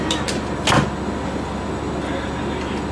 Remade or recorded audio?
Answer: recorded